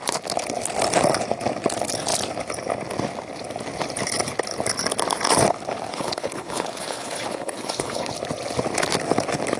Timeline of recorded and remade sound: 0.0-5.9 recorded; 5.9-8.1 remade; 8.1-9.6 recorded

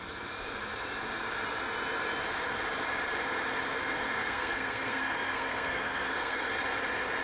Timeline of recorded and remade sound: 0.0-4.2 recorded; 4.2-6.5 remade; 6.5-7.2 recorded